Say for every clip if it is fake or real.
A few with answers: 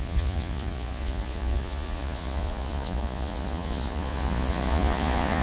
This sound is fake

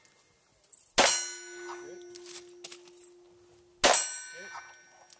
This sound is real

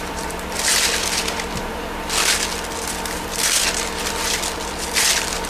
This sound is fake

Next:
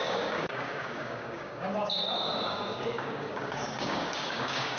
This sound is fake